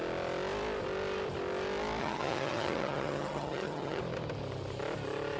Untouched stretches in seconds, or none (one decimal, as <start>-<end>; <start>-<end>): 0.0-2.0; 4.0-5.4